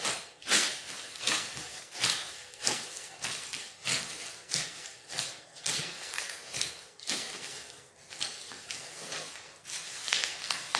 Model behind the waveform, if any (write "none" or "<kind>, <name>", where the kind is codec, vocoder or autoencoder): codec, SNAC